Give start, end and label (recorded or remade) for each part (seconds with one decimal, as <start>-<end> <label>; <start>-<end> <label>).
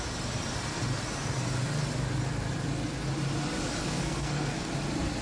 0.0-3.8 recorded; 3.8-4.7 remade; 4.7-5.2 recorded